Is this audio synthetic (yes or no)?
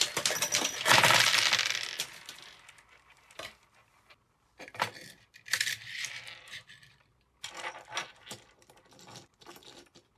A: no